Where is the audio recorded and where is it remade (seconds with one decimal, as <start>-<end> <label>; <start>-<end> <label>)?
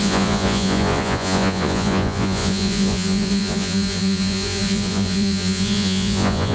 0.0-6.5 remade